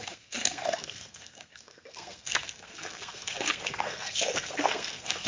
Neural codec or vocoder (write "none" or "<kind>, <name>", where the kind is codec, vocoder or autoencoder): codec, SNAC